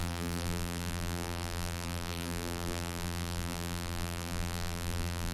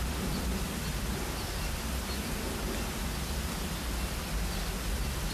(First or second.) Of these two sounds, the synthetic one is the first